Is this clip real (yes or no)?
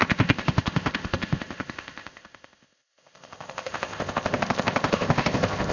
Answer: no